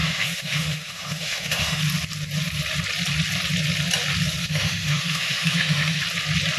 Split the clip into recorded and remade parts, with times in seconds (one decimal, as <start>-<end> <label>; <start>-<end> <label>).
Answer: 0.0-1.8 remade; 1.8-4.4 recorded; 4.4-6.0 remade; 6.0-6.6 recorded